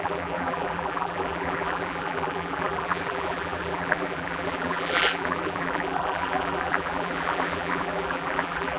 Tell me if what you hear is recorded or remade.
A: remade